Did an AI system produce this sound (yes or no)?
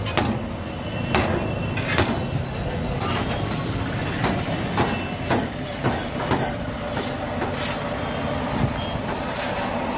no